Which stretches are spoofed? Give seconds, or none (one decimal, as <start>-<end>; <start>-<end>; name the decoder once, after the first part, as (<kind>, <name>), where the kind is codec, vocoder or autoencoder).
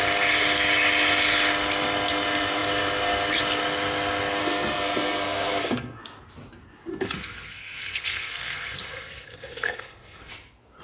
4.4-6.0 (codec, SNAC); 6.9-10.3